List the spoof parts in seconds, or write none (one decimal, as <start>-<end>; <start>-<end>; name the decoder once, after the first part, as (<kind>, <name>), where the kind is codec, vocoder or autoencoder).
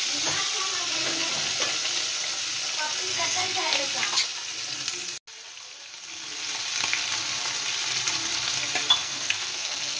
3.1-3.8 (codec, SNAC); 9.0-10.0